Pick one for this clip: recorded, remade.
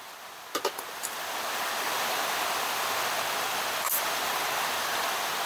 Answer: recorded